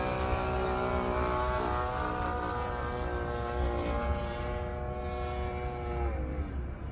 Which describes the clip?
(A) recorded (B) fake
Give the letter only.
A